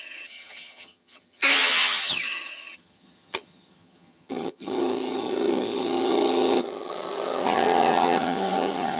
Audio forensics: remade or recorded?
remade